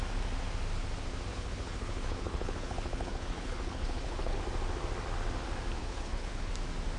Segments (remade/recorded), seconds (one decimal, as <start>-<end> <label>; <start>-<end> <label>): 0.0-1.3 recorded; 1.3-4.4 remade; 4.4-5.8 recorded; 5.8-6.5 remade; 6.5-7.0 recorded